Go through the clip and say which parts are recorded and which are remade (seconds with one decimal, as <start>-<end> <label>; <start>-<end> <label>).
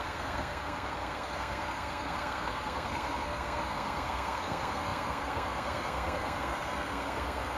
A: 0.0-7.6 remade